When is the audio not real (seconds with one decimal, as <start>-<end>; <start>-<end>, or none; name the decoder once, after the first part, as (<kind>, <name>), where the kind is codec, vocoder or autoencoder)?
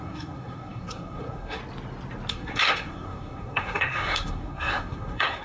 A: 0.0-1.6 (codec, SNAC); 2.3-5.4